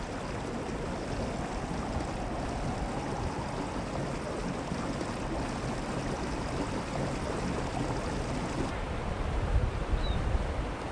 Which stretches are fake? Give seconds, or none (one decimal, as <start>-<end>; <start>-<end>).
none